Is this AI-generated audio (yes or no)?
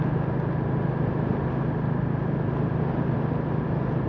no